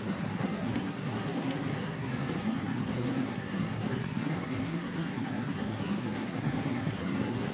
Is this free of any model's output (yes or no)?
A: no